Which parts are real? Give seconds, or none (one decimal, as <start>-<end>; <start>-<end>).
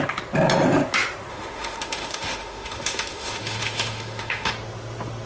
0.0-1.3; 4.5-5.3